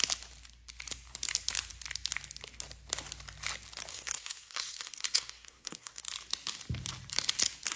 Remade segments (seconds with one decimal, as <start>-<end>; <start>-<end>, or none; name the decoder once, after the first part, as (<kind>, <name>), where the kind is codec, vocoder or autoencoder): 3.9-6.0 (codec, SNAC)